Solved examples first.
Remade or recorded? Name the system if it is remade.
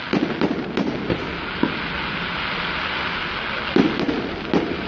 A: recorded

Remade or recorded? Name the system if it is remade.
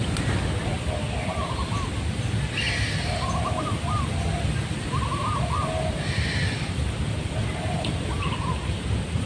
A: recorded